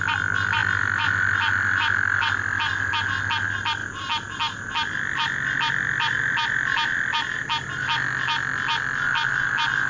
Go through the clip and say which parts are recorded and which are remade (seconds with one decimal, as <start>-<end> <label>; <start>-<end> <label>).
0.0-9.9 recorded